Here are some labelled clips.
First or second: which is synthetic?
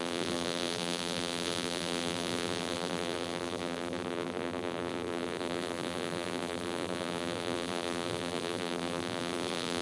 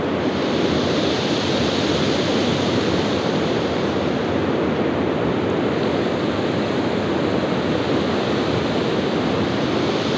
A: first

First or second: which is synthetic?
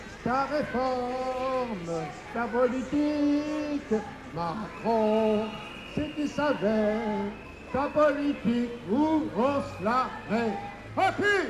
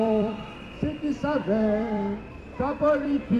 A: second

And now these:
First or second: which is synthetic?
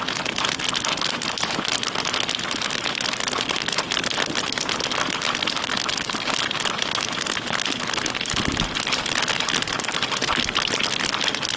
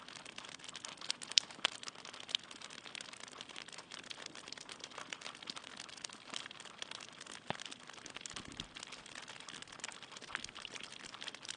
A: second